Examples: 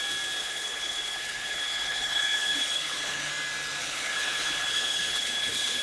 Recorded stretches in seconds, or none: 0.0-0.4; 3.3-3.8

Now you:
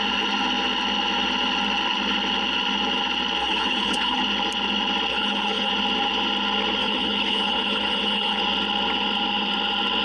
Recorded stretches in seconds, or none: 0.0-3.4; 4.2-5.1; 5.7-6.8; 8.4-10.0